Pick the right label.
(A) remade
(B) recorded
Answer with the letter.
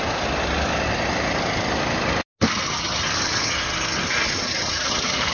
B